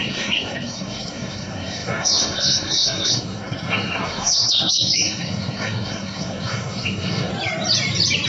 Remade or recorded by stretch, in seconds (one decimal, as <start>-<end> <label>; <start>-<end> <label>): 0.0-7.3 remade; 7.3-8.3 recorded